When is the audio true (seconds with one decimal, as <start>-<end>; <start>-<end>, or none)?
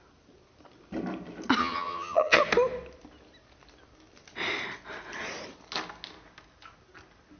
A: 0.0-1.6; 2.4-7.4